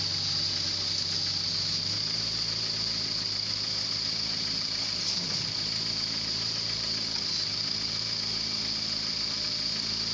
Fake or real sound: real